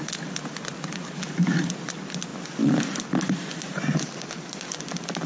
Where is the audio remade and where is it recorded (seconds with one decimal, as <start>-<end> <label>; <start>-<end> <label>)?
0.0-5.3 recorded